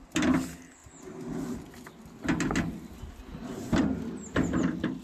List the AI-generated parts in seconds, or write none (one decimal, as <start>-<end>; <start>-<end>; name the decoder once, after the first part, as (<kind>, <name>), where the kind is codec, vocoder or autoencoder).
none